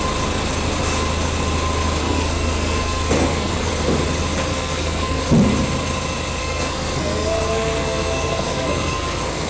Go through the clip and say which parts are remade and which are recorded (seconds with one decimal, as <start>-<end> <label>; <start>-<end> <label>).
0.0-2.0 recorded; 2.0-3.7 remade; 3.7-4.5 recorded; 4.5-5.2 remade; 5.2-6.4 recorded; 6.4-9.5 remade